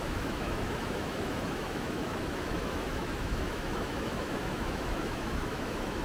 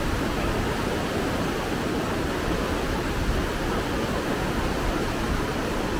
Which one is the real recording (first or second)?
second